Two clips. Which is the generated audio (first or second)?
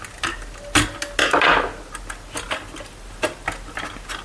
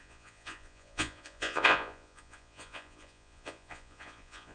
second